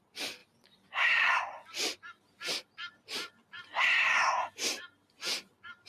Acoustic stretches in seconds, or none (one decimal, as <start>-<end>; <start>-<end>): 0.0-0.4; 3.3-5.9